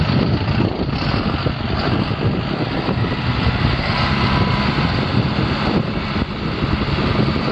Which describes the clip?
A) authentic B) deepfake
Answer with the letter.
A